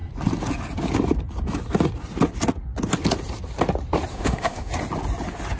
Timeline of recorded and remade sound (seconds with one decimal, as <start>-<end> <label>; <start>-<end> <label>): 0.0-4.1 recorded; 4.1-4.7 remade; 4.7-5.6 recorded